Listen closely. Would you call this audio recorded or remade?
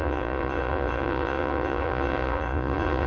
remade